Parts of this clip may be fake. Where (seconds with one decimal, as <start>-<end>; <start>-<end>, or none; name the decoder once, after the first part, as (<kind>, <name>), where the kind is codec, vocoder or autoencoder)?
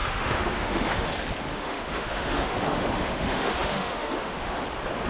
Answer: 0.0-1.1 (autoencoder, DAC-VAE); 1.5-4.6